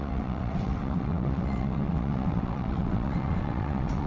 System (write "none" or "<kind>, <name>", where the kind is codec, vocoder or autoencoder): vocoder, WaveNeXt